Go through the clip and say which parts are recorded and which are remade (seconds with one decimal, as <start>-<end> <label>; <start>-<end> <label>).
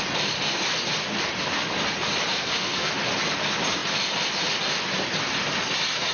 0.0-2.3 recorded; 2.3-2.9 remade; 2.9-6.1 recorded